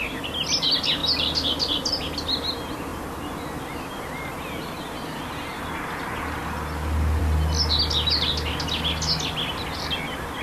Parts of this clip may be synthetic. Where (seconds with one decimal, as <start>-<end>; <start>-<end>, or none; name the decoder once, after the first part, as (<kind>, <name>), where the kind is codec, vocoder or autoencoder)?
none